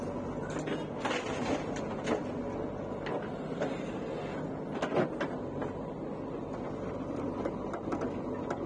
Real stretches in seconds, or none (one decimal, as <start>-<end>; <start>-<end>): 0.0-8.7